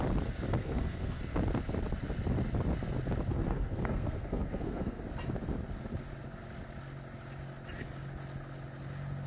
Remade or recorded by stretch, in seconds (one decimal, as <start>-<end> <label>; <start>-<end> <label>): 0.0-0.6 recorded; 0.6-1.2 remade; 1.2-3.3 recorded; 3.3-5.0 remade; 5.0-9.3 recorded